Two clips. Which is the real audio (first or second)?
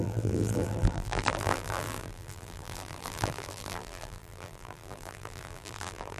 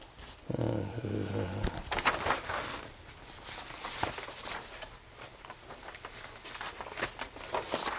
second